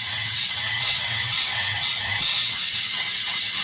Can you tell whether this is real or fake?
fake